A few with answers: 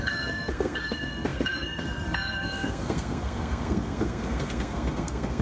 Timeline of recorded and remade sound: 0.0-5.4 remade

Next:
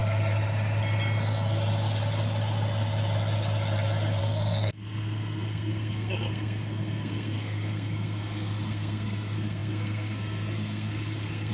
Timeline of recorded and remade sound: 0.0-4.2 recorded; 4.2-11.5 remade

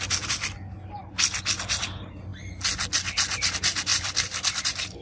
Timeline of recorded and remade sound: 0.0-3.9 recorded; 3.9-4.5 remade; 4.5-5.0 recorded

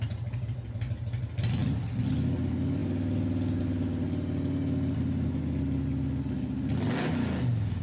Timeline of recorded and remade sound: 0.0-7.8 recorded

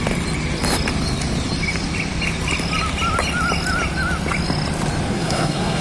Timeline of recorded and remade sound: 0.0-5.1 recorded; 5.1-5.8 remade

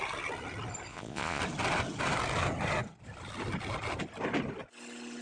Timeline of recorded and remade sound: 0.0-0.9 recorded; 0.9-1.4 remade; 1.4-5.2 recorded

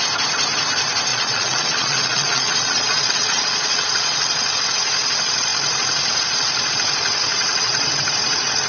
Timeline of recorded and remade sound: 0.0-1.1 recorded; 1.1-4.5 remade; 4.5-7.3 recorded; 7.3-7.9 remade; 7.9-8.7 recorded